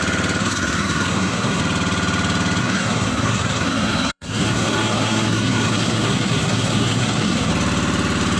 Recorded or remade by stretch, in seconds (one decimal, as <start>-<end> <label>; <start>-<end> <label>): 0.0-0.4 recorded; 0.4-1.6 remade; 1.6-2.6 recorded; 2.6-7.5 remade; 7.5-8.4 recorded